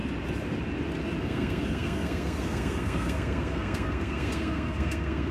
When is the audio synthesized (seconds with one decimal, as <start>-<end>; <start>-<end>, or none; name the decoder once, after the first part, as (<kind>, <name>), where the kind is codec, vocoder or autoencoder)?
1.2-5.3 (codec, SNAC)